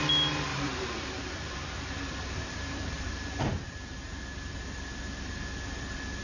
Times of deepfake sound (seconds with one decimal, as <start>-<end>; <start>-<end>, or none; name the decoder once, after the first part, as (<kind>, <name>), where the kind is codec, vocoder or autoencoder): 0.5-4.2 (vocoder, BigVGAN v2)